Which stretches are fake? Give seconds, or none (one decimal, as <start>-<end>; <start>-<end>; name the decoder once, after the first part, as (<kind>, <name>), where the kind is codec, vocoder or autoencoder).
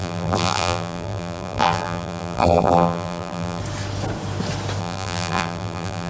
0.0-3.6 (vocoder, BigVGAN v2); 4.8-6.1